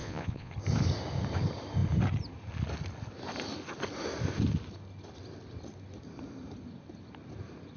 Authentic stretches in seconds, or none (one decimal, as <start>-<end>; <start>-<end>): 0.5-7.8